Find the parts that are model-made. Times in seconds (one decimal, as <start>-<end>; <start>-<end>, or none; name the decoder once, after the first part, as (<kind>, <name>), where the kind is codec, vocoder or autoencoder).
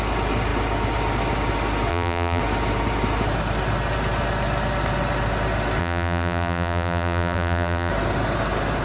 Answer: 1.9-2.4 (vocoder, BigVGAN v2); 5.8-7.9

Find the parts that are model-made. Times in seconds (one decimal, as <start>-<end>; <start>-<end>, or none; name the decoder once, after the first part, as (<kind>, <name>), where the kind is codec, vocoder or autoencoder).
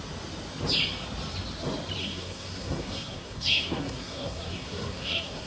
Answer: 2.0-5.5 (codec, SNAC)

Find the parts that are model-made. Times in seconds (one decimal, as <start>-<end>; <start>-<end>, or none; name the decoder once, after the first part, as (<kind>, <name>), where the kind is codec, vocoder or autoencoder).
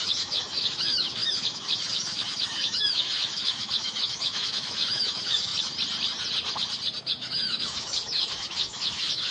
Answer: 0.0-5.5 (autoencoder, DAC-VAE); 7.0-9.3